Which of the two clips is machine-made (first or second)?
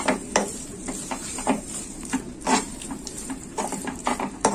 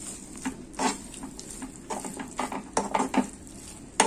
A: first